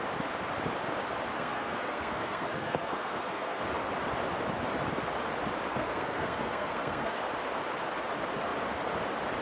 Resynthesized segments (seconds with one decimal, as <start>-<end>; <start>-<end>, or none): 1.3-3.6; 5.7-7.2